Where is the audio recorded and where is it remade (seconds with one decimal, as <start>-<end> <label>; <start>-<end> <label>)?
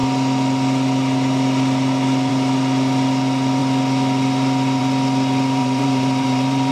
0.0-5.6 recorded; 5.6-6.7 remade